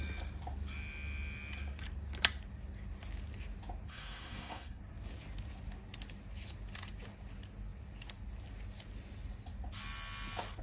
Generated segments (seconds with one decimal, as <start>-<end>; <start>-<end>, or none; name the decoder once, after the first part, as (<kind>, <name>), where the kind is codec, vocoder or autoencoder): 3.9-4.8 (codec, SNAC)